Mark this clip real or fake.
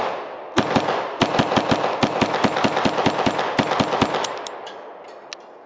real